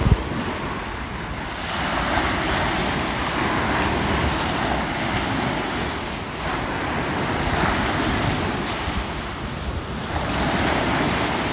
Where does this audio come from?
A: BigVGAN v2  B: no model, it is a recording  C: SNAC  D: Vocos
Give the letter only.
B